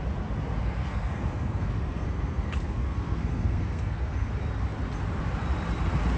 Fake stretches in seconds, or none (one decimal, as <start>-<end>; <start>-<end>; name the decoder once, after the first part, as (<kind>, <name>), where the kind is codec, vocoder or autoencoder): 0.6-4.3 (codec, SNAC)